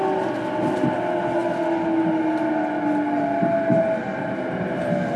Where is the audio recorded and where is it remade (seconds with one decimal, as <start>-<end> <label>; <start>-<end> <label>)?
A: 0.0-5.2 recorded